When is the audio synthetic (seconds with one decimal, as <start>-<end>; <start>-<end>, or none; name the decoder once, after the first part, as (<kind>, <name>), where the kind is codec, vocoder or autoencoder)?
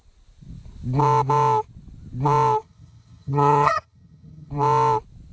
2.6-4.5 (vocoder, HiFi-GAN)